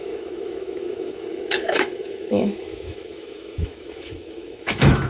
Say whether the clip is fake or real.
fake